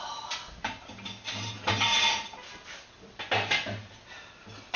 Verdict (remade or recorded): recorded